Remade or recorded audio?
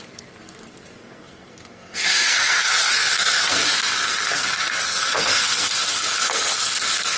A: remade